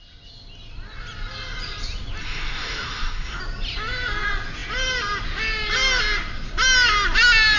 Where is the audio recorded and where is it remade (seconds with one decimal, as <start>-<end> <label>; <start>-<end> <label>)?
0.0-2.2 recorded; 2.2-3.4 remade; 3.4-7.6 recorded